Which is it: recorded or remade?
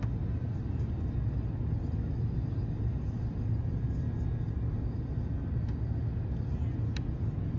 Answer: recorded